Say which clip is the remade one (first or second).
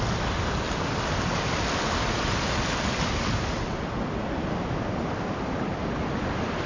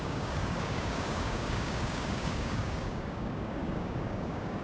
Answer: second